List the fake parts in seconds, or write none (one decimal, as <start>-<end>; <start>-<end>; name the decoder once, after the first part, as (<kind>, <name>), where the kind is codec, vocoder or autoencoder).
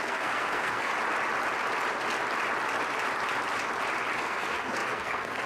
0.0-0.9 (codec, SNAC); 4.2-5.5